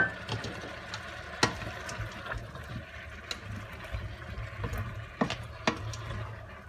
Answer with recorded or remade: recorded